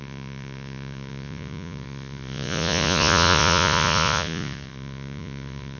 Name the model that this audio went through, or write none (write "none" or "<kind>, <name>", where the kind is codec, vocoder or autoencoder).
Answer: vocoder, Vocos